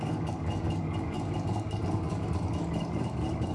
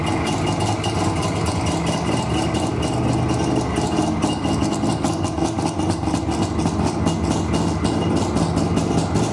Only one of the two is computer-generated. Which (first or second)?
first